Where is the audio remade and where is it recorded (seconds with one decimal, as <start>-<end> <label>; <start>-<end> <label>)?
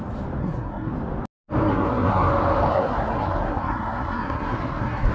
0.0-0.4 recorded; 0.4-0.9 remade; 0.9-1.7 recorded; 1.7-2.3 remade; 2.3-2.7 recorded; 2.7-5.1 remade